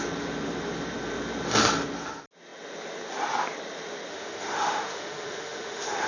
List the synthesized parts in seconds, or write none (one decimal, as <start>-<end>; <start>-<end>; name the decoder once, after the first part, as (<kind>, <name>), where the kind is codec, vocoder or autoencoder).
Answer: 4.1-6.1 (autoencoder, DAC-VAE)